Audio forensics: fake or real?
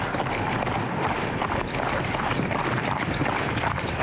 fake